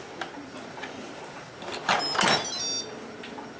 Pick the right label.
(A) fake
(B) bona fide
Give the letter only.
B